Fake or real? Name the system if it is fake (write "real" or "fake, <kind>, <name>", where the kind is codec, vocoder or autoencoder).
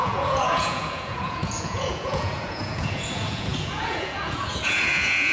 fake, vocoder, Vocos